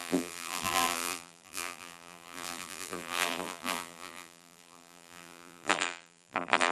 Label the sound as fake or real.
fake